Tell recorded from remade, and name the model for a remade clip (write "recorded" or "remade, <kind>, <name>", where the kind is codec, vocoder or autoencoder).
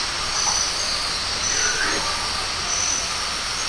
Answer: recorded